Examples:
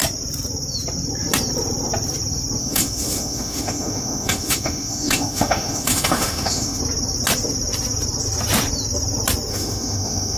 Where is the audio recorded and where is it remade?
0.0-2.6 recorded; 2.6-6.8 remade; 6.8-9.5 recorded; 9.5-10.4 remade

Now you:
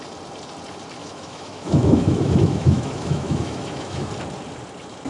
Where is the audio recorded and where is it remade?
0.0-1.0 recorded; 1.0-4.1 remade; 4.1-5.1 recorded

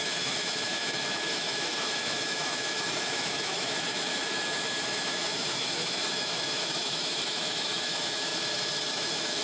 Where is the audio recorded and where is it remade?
0.0-8.3 remade; 8.3-8.9 recorded; 8.9-9.4 remade

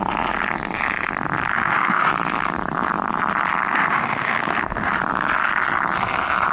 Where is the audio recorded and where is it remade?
0.0-1.5 recorded; 1.5-2.1 remade; 2.1-3.7 recorded; 3.7-4.9 remade; 4.9-6.5 recorded

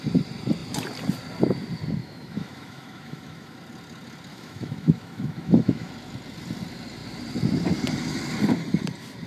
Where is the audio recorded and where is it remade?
0.0-2.0 recorded; 2.0-3.6 remade; 3.6-4.3 recorded; 4.3-5.9 remade; 5.9-9.3 recorded